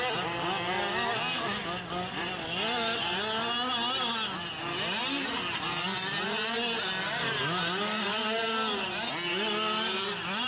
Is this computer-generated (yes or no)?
no